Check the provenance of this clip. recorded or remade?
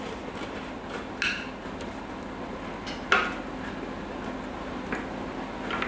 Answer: recorded